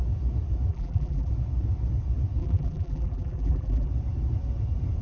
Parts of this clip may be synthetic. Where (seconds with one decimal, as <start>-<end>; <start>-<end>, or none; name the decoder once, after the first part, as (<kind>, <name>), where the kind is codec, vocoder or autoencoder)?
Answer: 0.7-1.3 (vocoder, BigVGAN v2); 2.4-3.9